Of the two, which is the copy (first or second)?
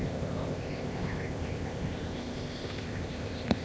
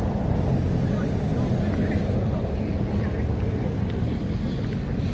first